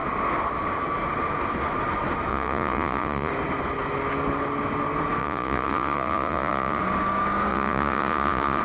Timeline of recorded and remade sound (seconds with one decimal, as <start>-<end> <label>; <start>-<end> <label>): 0.0-2.3 recorded; 2.3-3.3 remade; 3.3-5.2 recorded; 5.2-6.8 remade; 6.8-7.5 recorded; 7.5-8.6 remade